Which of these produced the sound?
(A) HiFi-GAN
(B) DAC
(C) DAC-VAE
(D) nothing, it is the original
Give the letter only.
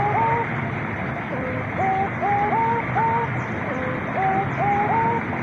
D